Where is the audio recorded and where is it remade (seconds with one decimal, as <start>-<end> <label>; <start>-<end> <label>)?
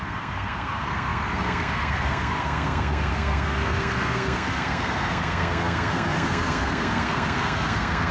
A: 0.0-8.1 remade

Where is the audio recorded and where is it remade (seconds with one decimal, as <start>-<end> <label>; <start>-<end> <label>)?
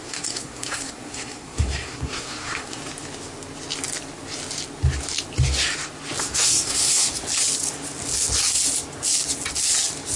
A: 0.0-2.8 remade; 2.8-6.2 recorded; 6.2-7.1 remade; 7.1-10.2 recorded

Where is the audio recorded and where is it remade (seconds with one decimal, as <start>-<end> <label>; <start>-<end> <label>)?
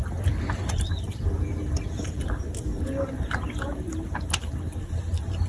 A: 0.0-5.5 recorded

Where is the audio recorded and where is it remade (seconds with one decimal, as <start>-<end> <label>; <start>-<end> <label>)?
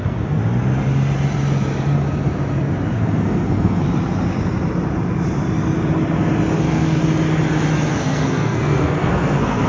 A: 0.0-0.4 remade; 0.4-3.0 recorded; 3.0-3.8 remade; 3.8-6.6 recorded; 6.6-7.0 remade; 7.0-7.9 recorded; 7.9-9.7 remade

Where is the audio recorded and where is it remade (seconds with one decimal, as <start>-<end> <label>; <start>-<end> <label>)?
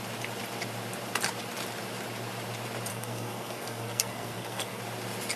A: 0.0-2.9 recorded; 2.9-4.8 remade; 4.8-5.4 recorded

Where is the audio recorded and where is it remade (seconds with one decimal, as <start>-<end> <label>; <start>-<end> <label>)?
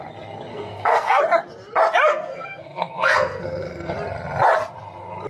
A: 0.0-0.5 recorded; 0.5-1.2 remade; 1.2-2.1 recorded; 2.1-3.9 remade; 3.9-5.3 recorded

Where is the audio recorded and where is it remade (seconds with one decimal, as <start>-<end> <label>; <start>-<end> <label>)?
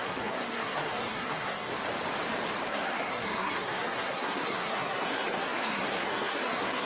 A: 0.0-1.7 remade; 1.7-2.7 recorded; 2.7-6.9 remade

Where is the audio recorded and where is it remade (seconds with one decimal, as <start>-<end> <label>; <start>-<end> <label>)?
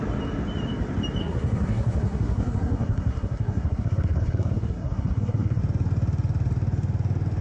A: 0.0-1.2 recorded; 1.2-5.6 remade; 5.6-7.4 recorded